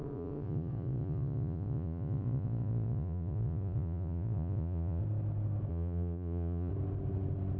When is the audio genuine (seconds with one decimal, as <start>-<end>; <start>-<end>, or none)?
5.0-5.7; 6.7-7.6